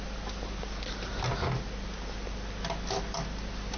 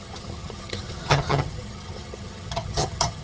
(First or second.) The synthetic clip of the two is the second